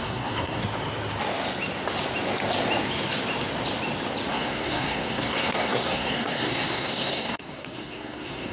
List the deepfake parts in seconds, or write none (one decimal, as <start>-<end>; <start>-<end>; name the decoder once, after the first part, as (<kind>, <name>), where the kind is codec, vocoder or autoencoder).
0.0-0.6 (codec, SNAC); 4.3-8.5